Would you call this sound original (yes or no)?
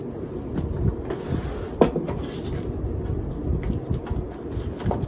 yes